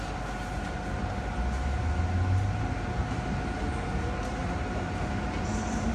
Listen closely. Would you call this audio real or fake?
real